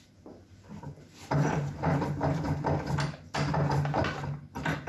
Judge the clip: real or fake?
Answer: real